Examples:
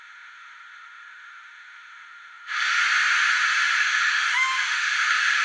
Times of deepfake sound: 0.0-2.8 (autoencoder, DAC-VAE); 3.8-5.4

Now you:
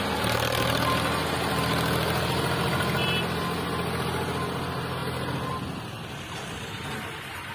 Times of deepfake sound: none

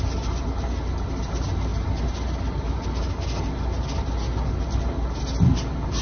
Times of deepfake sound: none

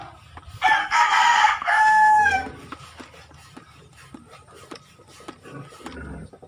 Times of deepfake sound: 0.8-2.5 (codec, SNAC)

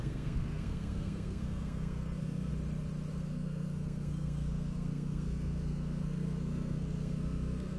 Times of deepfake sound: 0.0-2.5 (codec, SNAC); 3.1-7.8

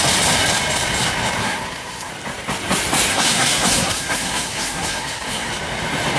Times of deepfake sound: 1.4-2.1 (codec, SNAC); 3.1-5.5